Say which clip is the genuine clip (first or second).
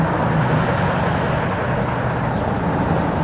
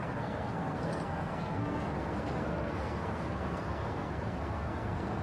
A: first